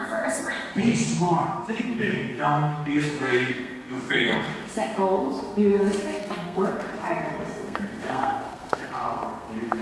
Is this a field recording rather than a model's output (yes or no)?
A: no